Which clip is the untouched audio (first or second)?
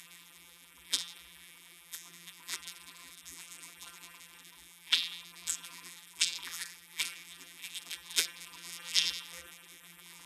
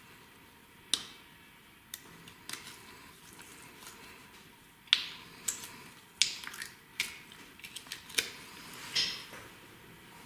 second